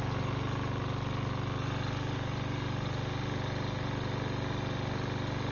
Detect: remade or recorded recorded